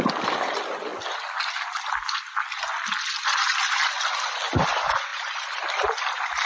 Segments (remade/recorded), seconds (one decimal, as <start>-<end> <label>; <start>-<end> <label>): 0.0-6.4 recorded